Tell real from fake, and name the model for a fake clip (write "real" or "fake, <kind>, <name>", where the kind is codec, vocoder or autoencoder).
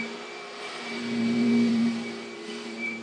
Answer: fake, vocoder, BigVGAN v2